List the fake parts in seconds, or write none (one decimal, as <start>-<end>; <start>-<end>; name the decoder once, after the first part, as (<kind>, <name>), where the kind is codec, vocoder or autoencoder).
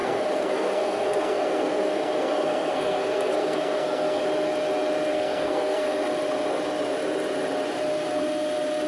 0.0-4.2 (codec, SNAC); 5.1-6.0